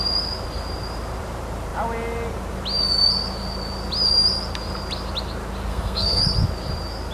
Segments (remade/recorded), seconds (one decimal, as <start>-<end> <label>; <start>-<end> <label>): 0.0-5.7 recorded; 5.7-6.2 remade; 6.2-7.1 recorded